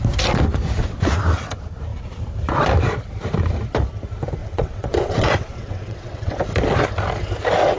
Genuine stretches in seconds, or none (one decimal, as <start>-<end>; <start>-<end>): 0.0-0.8; 1.4-4.4; 6.4-7.8